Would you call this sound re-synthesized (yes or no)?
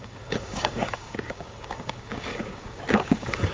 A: yes